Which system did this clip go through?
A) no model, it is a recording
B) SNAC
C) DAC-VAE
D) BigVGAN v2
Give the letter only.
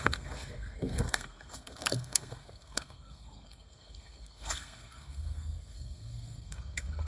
B